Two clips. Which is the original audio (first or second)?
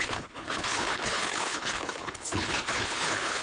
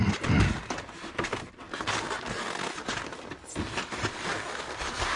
second